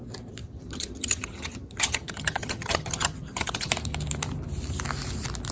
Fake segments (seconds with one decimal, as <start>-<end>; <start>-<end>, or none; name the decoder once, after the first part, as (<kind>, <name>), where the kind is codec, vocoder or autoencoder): 0.4-3.7 (vocoder, HiFi-GAN)